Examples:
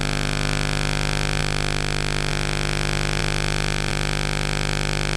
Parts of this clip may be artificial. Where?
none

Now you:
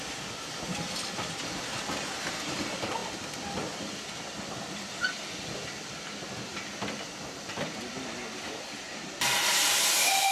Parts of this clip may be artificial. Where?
3.0-5.8 (vocoder, BigVGAN v2)

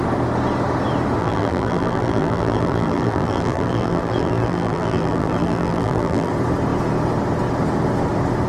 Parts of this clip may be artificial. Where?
1.2-6.3 (vocoder, BigVGAN v2)

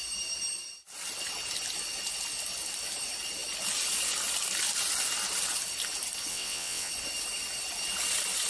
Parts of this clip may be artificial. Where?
6.3-6.9 (vocoder, WaveNeXt)

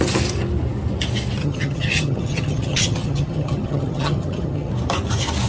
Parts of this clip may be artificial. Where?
1.4-4.7 (vocoder, HiFi-GAN)

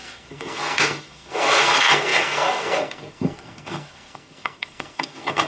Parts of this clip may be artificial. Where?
0.0-5.5 (codec, SNAC)